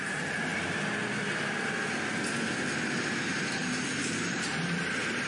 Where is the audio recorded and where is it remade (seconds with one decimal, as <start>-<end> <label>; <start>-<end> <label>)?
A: 0.0-5.3 recorded